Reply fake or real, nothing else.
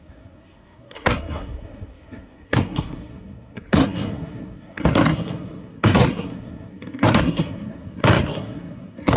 fake